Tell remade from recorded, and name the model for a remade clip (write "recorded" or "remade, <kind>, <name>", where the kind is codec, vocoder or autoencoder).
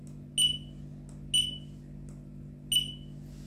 recorded